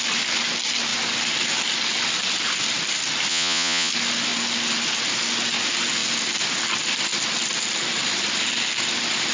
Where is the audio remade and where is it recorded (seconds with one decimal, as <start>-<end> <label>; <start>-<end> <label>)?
0.0-3.3 recorded; 3.3-3.9 remade; 3.9-9.3 recorded